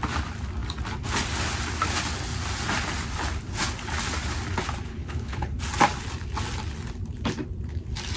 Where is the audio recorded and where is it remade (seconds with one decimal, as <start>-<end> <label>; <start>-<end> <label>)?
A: 0.0-4.9 recorded; 4.9-5.6 remade; 5.6-8.2 recorded